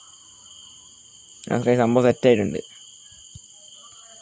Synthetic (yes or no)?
no